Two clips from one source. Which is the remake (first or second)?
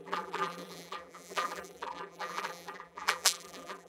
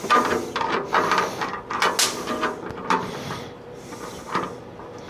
first